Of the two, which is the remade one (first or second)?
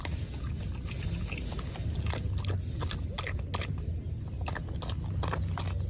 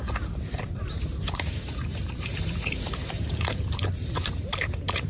second